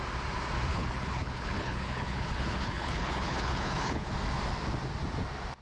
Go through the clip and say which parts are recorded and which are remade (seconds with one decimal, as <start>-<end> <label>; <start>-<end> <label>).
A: 0.0-0.7 recorded; 0.7-4.1 remade; 4.1-5.6 recorded